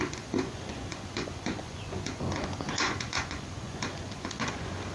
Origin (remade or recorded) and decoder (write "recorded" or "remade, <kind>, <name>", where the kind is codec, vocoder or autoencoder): remade, vocoder, Vocos